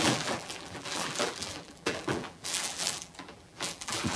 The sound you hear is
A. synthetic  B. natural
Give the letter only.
A